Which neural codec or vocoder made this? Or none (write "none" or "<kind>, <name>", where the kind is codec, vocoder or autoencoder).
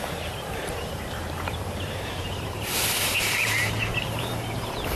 vocoder, BigVGAN v2